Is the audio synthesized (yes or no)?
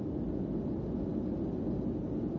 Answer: no